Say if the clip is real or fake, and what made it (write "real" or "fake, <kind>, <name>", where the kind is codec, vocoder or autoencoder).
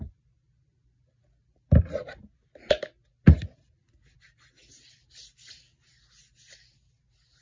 real